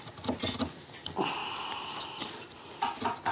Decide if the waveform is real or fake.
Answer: real